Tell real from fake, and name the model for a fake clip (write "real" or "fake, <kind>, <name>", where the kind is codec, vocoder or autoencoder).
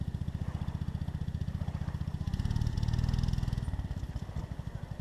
real